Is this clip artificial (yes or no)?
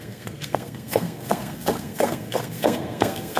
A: yes